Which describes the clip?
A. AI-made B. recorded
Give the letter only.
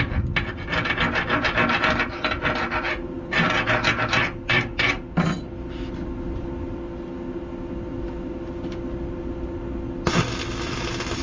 B